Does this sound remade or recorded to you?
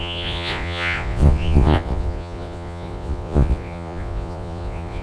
remade